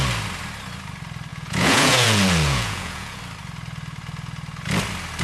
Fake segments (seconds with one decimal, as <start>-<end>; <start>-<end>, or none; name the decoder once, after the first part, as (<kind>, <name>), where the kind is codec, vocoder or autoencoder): 1.3-3.2 (vocoder, Vocos)

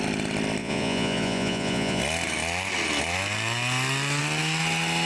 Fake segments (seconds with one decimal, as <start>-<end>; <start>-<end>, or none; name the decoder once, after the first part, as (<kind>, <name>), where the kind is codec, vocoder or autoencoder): 0.6-2.0 (vocoder, Vocos)

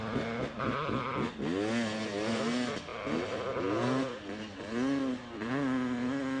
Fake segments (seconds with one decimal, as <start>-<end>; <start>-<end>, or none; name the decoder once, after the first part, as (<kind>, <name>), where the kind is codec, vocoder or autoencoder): none

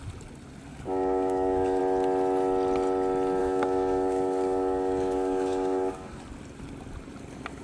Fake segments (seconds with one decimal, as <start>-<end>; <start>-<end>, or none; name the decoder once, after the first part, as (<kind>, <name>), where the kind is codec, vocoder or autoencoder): 0.7-1.8 (codec, DAC); 3.4-6.2